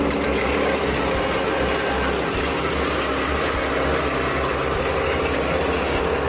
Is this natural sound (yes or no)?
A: yes